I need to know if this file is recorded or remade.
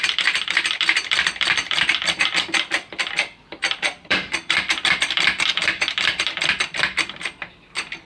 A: remade